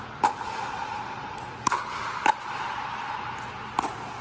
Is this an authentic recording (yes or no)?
yes